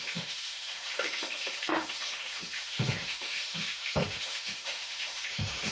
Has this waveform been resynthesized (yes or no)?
yes